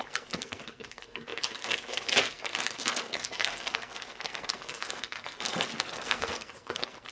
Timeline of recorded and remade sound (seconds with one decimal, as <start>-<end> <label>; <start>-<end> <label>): 0.0-7.1 remade